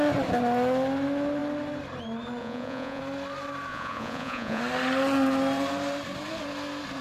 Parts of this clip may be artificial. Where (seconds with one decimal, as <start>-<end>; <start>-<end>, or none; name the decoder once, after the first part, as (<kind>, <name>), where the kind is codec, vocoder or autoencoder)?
2.4-3.0 (vocoder, Vocos); 3.7-4.6